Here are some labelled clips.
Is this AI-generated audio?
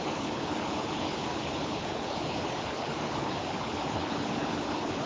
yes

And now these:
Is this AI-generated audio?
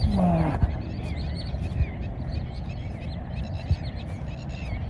no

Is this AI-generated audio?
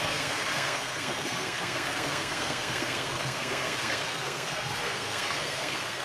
yes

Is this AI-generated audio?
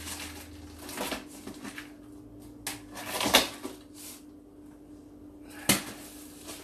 no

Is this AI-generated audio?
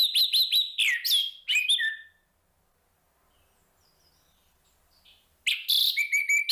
no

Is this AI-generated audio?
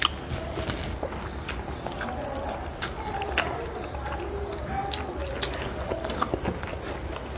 no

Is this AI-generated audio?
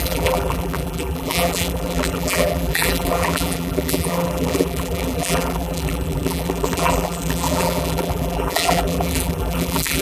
yes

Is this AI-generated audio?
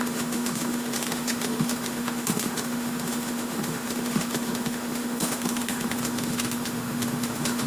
yes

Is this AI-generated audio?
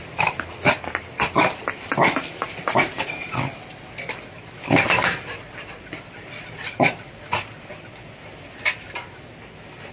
yes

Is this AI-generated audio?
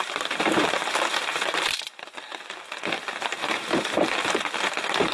yes